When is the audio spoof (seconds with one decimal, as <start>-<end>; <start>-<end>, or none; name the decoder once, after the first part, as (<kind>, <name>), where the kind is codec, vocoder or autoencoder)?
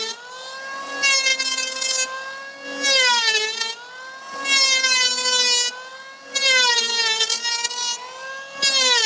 none